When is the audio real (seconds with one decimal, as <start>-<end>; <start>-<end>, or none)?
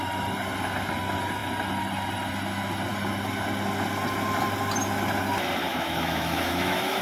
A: 0.0-5.7